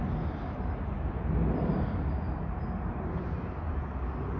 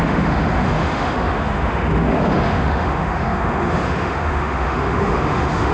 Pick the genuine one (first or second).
first